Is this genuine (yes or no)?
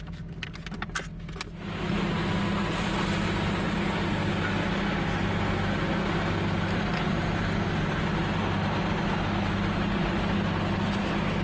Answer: yes